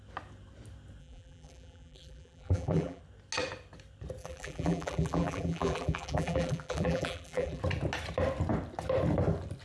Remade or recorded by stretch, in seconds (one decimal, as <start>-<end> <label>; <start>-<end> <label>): 0.0-1.0 recorded; 1.0-3.0 remade; 3.0-4.2 recorded; 4.2-7.6 remade; 7.6-9.6 recorded